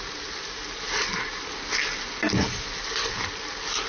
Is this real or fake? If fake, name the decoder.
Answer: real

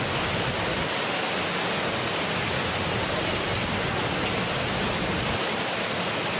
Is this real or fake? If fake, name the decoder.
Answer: real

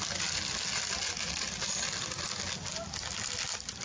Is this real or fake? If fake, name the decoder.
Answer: real